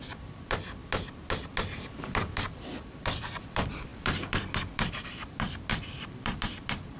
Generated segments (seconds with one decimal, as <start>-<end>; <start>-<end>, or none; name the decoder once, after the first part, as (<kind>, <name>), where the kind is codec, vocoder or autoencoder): 0.0-0.8 (vocoder, BigVGAN v2); 1.9-7.0